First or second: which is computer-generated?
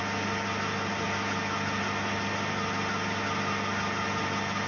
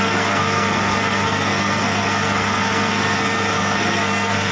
second